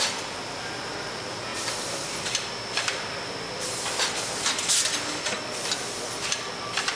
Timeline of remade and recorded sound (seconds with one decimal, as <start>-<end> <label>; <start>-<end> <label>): 0.0-7.0 recorded